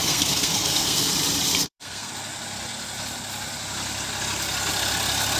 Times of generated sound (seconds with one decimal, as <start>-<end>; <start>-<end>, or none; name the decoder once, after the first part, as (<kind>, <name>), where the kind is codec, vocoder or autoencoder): 0.0-1.1 (codec, SNAC); 1.5-2.1